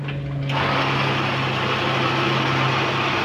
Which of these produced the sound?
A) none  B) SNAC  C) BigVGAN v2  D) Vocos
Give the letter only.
A